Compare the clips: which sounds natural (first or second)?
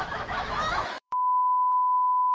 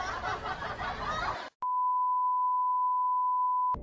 second